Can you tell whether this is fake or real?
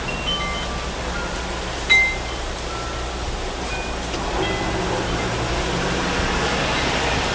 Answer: real